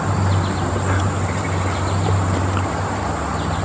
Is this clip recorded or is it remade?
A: recorded